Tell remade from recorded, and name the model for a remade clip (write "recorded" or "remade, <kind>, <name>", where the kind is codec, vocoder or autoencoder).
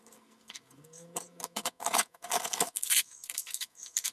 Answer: remade, codec, SNAC